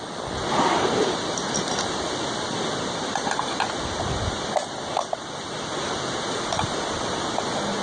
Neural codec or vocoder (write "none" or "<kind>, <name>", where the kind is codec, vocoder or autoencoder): none